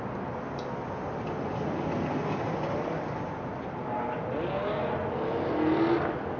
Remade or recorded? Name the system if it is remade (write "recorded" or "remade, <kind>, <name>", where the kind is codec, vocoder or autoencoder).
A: recorded